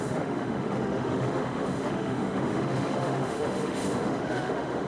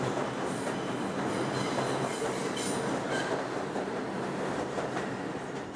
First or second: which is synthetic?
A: first